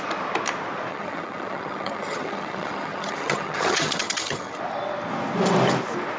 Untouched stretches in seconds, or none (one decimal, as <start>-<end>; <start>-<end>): 0.0-0.9; 4.6-6.2

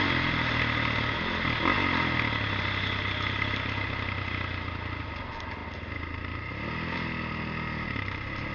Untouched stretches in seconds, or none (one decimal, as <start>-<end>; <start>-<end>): 0.0-8.5

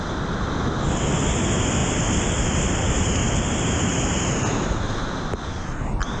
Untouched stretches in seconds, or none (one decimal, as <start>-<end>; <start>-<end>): 0.0-6.2

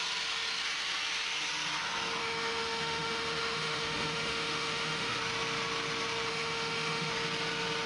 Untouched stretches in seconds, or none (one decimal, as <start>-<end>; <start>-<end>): 0.0-2.2; 5.2-6.3; 7.1-7.9

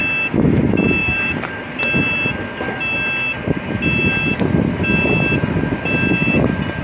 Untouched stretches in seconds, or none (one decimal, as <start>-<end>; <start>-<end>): 0.0-1.0; 1.5-6.8

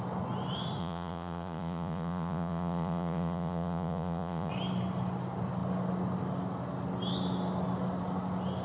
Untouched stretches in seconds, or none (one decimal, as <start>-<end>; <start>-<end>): 0.0-0.8; 4.5-8.6

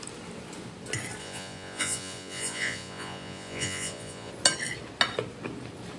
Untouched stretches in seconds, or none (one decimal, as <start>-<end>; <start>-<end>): 0.0-1.2; 4.3-6.0